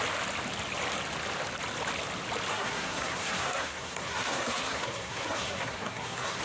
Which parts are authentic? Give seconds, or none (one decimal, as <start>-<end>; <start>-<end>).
0.0-2.5